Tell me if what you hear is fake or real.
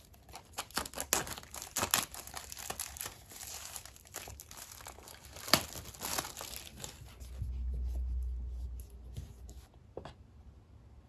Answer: real